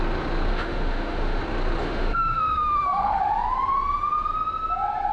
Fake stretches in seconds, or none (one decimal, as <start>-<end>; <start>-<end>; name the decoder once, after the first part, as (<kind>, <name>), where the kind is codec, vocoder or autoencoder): 0.5-1.4 (autoencoder, DAC-VAE); 1.8-3.2